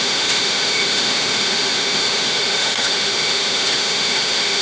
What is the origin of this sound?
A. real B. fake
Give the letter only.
B